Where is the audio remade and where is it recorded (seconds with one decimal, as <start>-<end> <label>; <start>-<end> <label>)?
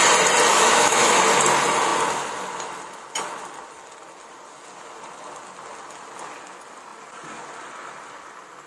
0.0-0.5 recorded; 0.5-1.2 remade; 1.2-8.7 recorded